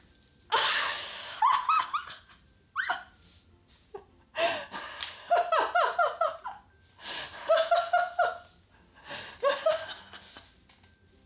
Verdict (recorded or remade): recorded